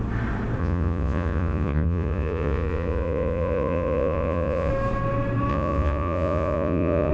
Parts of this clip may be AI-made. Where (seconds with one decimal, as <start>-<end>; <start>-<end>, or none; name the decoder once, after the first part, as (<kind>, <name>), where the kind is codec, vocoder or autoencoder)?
0.6-4.7 (vocoder, Vocos); 5.5-7.1